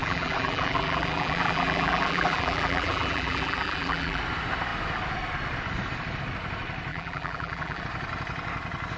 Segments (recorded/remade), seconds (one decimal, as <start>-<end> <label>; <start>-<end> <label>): 0.0-4.2 remade; 4.2-6.9 recorded; 6.9-7.8 remade; 7.8-9.0 recorded